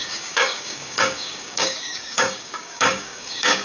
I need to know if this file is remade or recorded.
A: remade